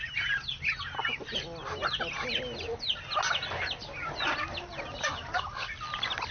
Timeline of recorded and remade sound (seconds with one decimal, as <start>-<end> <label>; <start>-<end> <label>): 0.0-4.7 recorded; 4.7-5.6 remade; 5.6-6.3 recorded